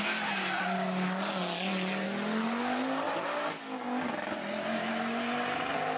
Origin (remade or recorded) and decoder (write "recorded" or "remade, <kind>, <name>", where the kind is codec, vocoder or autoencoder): recorded